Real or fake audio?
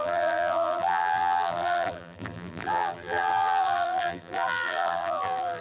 fake